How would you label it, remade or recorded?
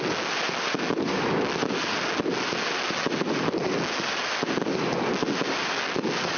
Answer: recorded